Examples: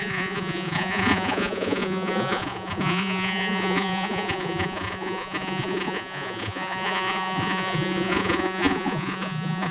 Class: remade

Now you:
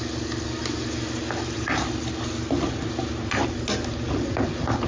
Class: recorded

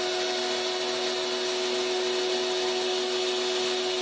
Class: recorded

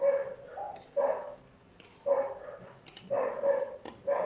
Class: recorded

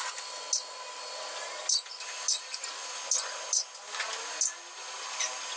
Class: recorded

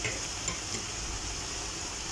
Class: recorded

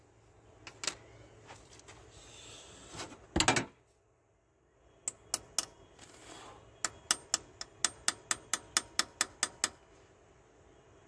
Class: recorded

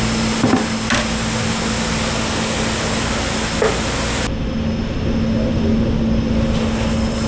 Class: recorded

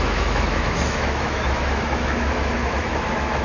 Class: remade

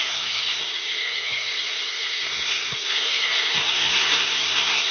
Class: remade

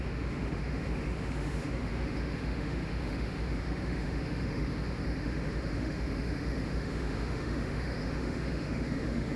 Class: remade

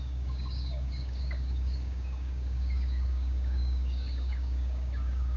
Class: remade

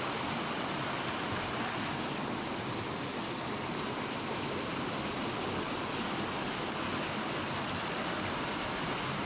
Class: recorded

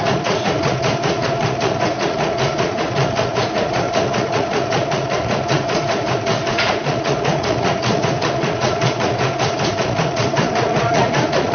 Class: remade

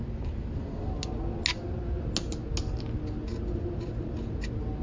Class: recorded